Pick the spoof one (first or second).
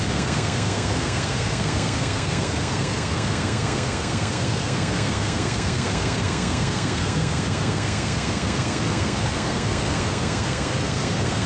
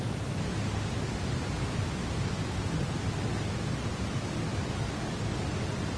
first